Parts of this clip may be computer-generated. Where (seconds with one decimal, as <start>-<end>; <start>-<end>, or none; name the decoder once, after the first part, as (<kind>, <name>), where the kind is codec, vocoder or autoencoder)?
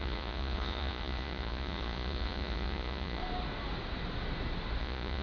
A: 0.0-3.2 (vocoder, Vocos); 4.8-5.2